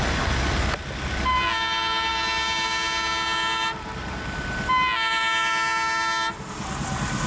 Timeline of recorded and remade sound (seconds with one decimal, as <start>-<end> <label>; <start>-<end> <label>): 0.0-7.3 recorded